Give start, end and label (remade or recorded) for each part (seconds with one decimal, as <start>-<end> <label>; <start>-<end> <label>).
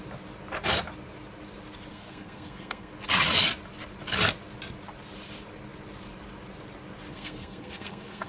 0.0-1.9 recorded; 1.9-2.9 remade; 2.9-7.1 recorded; 7.1-8.3 remade